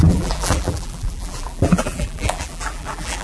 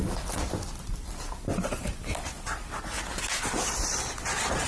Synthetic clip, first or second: first